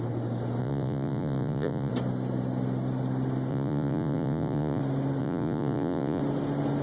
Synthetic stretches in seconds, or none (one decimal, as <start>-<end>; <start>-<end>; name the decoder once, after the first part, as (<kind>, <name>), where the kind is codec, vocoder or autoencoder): 0.6-1.9 (vocoder, Vocos); 3.5-4.8; 5.2-6.2